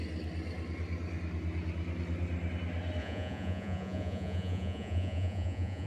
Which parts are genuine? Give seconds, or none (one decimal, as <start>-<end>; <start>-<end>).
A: 0.0-3.0